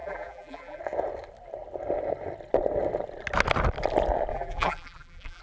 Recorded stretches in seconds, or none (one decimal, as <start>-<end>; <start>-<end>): 0.8-4.3